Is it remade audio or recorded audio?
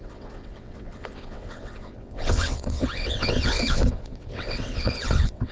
remade